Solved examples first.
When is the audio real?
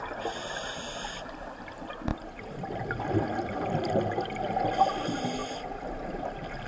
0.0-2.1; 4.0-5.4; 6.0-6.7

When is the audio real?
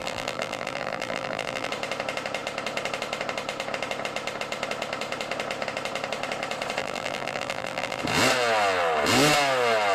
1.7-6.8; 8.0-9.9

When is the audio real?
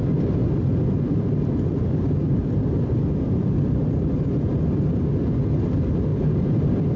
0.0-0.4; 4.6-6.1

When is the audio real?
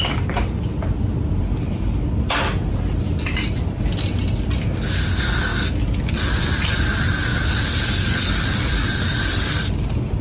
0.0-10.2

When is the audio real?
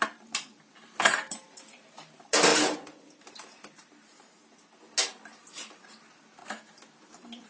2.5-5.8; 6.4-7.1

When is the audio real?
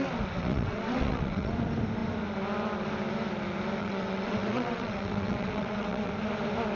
0.0-0.4; 1.5-3.8; 6.1-6.8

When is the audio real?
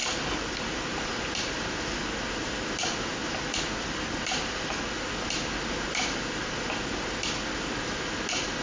0.0-8.6